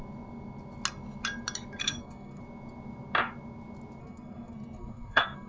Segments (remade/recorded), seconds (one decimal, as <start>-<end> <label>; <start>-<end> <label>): 0.0-1.8 recorded; 1.8-2.4 remade; 2.4-4.0 recorded; 4.0-5.5 remade